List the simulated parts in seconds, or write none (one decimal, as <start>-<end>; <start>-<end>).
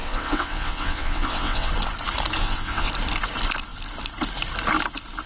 0.0-1.7; 2.4-2.9